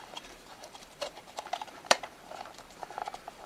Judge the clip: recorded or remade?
remade